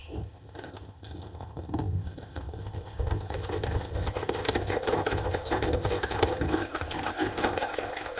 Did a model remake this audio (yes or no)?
yes